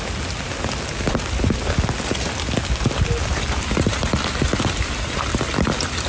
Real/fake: real